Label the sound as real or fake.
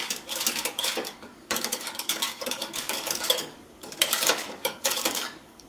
fake